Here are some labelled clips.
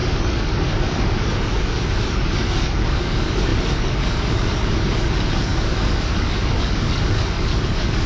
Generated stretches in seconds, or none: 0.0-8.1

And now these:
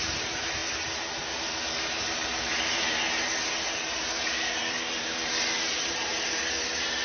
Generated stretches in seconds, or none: 0.0-7.0